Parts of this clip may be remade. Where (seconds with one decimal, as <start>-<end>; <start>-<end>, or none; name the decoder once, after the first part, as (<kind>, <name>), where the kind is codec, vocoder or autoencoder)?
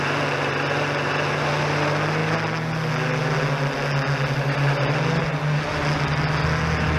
none